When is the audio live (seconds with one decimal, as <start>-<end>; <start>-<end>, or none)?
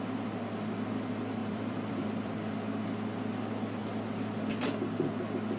0.0-1.4; 2.5-5.6